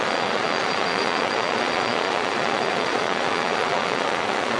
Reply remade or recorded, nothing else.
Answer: remade